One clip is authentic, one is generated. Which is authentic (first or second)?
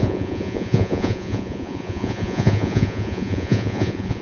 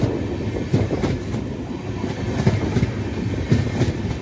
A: second